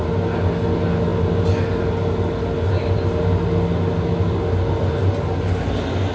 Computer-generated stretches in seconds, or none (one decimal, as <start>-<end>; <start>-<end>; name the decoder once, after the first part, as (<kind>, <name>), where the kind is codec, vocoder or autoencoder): none